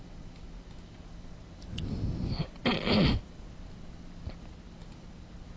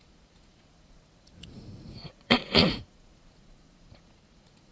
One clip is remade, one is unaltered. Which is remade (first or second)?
second